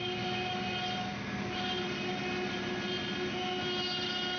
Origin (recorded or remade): recorded